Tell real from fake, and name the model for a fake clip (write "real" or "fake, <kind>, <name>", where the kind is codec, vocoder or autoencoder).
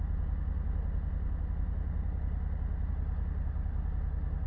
real